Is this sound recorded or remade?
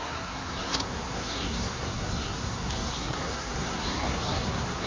remade